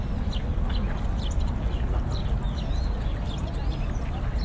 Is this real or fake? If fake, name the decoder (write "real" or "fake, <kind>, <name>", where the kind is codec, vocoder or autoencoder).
real